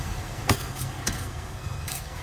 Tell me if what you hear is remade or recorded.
remade